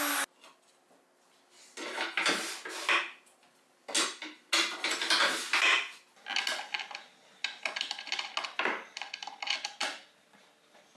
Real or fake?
real